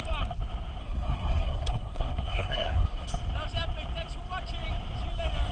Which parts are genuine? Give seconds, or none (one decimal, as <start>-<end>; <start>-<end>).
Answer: 0.0-0.8; 3.1-5.5